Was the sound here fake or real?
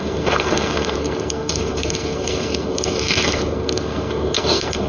fake